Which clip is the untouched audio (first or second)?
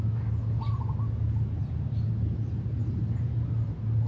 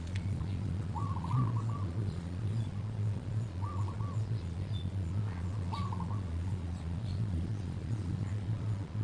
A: first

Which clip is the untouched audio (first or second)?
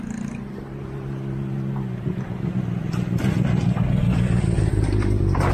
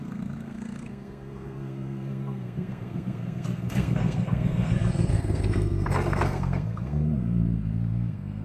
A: first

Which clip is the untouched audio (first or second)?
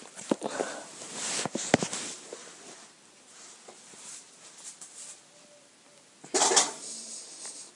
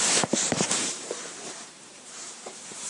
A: first